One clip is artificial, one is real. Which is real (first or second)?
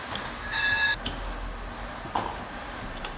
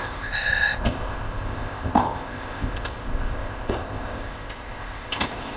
first